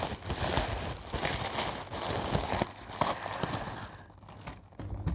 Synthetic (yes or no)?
no